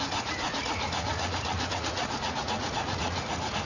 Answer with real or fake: fake